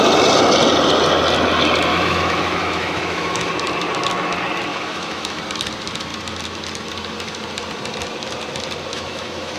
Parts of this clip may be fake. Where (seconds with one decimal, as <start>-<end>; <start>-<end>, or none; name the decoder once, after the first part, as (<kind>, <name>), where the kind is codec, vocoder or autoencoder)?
1.9-3.5 (autoencoder, DAC-VAE); 4.7-5.4; 8.9-9.6